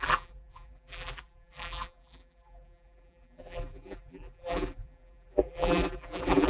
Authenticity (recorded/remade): remade